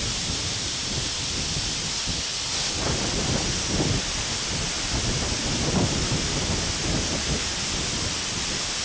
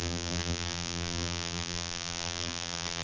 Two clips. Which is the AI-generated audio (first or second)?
second